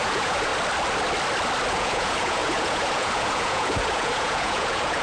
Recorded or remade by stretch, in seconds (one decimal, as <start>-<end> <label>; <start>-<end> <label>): 0.0-0.5 remade; 0.5-1.7 recorded; 1.7-5.0 remade